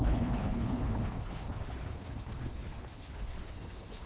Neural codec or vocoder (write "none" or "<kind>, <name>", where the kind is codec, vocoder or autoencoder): codec, HILCodec